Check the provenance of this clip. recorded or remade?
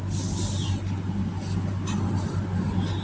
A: recorded